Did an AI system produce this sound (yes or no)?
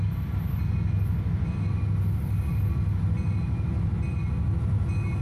no